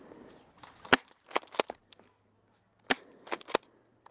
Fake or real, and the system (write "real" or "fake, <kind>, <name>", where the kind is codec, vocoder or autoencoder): real